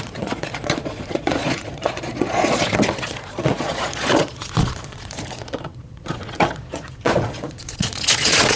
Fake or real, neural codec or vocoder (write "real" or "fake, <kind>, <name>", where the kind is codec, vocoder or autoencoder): fake, vocoder, Vocos